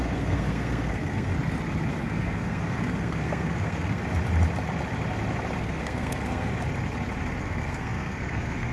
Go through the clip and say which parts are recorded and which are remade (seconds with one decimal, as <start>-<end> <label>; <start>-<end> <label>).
0.0-1.3 remade; 1.3-1.9 recorded; 1.9-4.0 remade; 4.0-5.6 recorded; 5.6-6.5 remade; 6.5-7.4 recorded; 7.4-8.7 remade